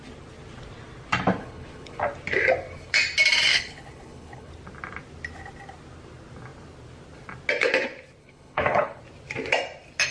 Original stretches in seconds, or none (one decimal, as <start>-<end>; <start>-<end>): 0.0-1.4; 2.0-3.5; 4.5-8.2; 9.0-10.1